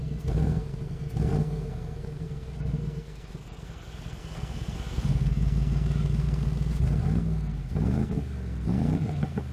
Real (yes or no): no